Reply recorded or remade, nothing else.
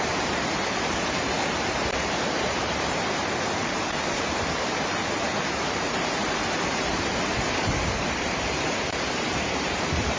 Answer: remade